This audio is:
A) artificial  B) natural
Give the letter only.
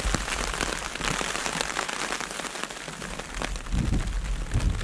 B